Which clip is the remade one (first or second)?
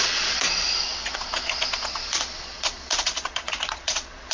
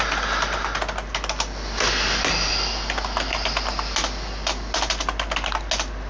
first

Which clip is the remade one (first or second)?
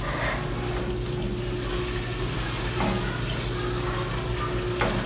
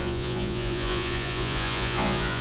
second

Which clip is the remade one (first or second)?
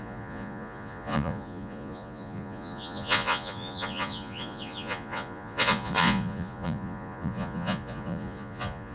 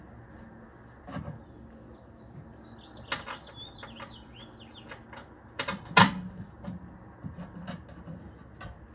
first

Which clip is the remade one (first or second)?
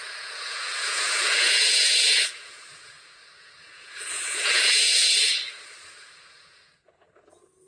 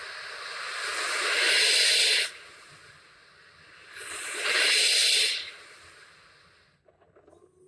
first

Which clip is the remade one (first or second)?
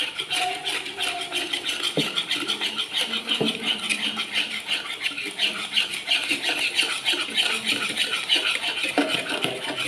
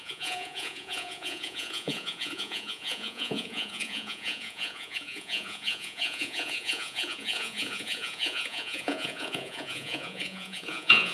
second